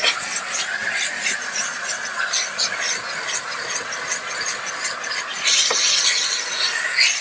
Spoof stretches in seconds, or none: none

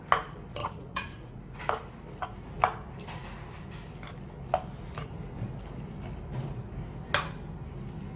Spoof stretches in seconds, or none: 0.6-1.6 (vocoder, Vocos)

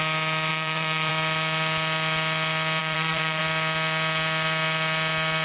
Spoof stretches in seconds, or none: 0.5-1.1 (vocoder, Vocos); 2.8-3.4